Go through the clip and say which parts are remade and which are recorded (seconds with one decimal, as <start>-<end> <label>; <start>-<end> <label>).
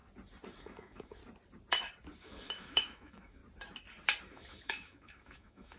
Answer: 0.0-0.5 recorded; 0.5-1.2 remade; 1.2-2.2 recorded; 2.2-3.4 remade; 3.4-4.2 recorded; 4.2-5.8 remade